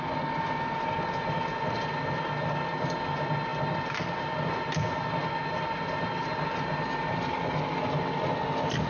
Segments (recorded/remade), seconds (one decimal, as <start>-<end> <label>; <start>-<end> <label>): 0.0-8.9 recorded